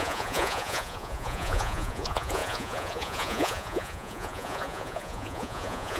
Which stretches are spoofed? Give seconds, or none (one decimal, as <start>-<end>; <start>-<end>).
0.0-6.0